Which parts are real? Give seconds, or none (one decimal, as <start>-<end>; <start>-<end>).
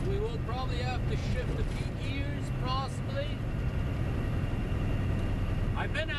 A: 0.0-1.2; 2.1-6.2